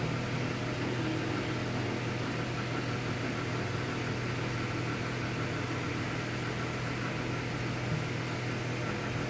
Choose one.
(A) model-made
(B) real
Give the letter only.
B